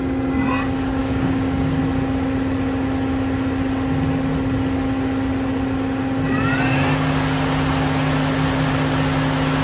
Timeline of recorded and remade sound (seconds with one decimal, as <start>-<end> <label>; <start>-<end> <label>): 0.0-1.0 recorded; 1.0-1.8 remade; 1.8-9.6 recorded